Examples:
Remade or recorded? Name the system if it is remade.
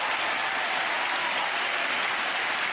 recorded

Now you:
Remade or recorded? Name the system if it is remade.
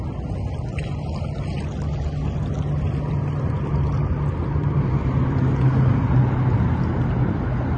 recorded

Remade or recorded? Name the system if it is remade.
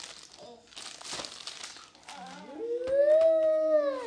recorded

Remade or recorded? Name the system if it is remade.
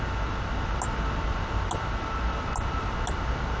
recorded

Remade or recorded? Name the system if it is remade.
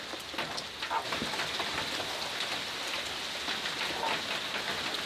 recorded